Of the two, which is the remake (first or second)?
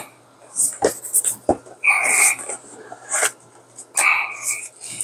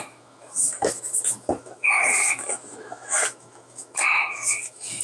second